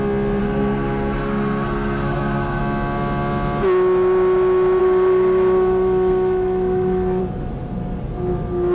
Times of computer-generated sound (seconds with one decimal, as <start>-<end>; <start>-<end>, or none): 0.4-2.6; 4.8-7.2